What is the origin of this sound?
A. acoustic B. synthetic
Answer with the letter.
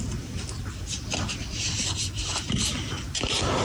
A